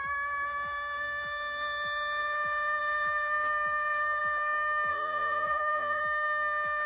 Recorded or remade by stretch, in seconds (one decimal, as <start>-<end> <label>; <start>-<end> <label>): 0.0-4.9 recorded; 4.9-6.0 remade; 6.0-6.9 recorded